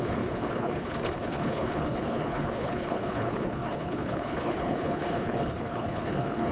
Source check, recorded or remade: remade